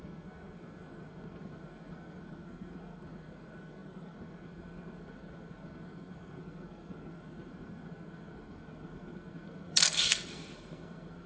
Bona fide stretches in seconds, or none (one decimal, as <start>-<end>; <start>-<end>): none